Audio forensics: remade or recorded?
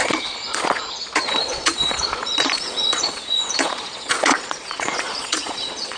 remade